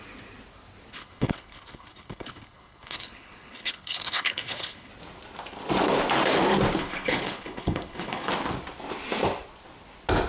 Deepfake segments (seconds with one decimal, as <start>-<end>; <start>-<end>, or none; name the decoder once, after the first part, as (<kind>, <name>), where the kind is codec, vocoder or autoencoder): 0.9-4.9 (codec, HILCodec); 6.8-8.3